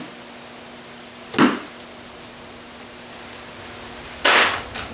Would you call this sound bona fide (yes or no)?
yes